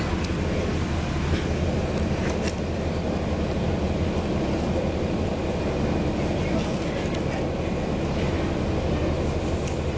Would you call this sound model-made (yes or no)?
no